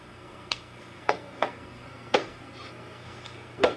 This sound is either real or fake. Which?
fake